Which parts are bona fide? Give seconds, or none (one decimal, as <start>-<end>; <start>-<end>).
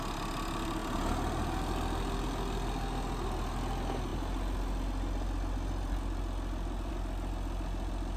0.0-8.2